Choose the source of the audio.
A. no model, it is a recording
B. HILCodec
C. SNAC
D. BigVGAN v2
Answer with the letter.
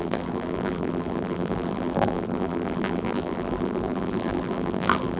D